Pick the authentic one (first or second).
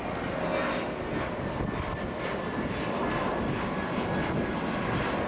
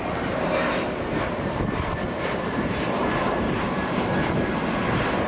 first